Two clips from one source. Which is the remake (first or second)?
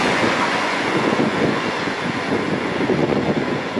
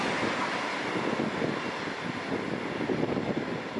first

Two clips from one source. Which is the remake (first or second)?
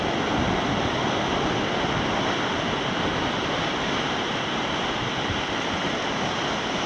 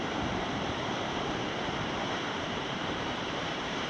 second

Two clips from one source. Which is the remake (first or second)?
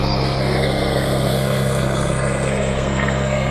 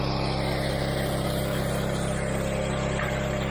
first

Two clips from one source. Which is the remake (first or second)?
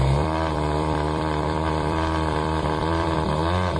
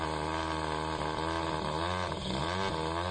first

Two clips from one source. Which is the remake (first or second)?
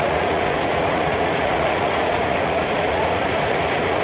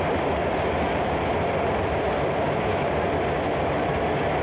first